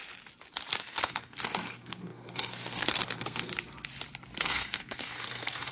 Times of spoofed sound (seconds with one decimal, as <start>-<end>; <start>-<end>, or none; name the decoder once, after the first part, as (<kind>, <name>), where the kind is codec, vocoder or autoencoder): 0.8-3.5 (codec, SNAC); 4.4-5.7